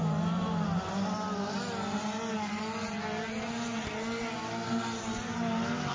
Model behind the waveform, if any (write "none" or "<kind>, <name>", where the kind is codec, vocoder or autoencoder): none